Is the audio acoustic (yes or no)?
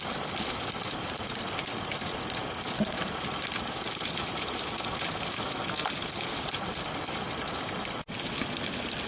yes